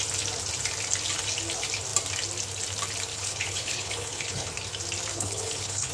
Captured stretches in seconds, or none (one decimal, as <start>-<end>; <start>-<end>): 0.0-3.1; 4.5-5.1

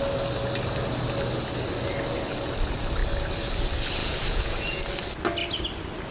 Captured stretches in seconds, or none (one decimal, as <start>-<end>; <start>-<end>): 0.0-4.0; 4.8-6.1

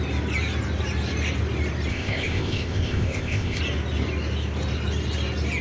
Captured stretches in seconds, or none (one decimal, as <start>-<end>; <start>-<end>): 0.0-1.9; 3.6-5.6

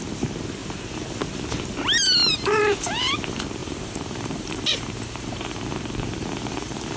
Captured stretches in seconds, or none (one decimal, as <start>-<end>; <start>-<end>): 0.0-2.2; 3.1-3.6

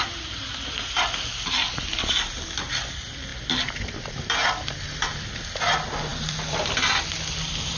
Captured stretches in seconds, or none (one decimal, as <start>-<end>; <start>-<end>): 0.0-6.1; 6.8-7.8

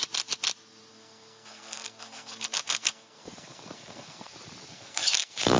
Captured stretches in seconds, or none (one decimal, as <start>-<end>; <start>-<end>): 0.0-0.9; 4.3-4.7

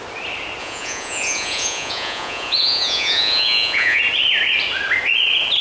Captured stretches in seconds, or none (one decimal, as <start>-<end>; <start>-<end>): 0.0-0.6; 4.0-5.6

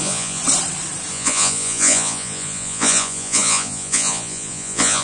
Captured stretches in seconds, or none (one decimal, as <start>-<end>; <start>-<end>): 0.4-1.1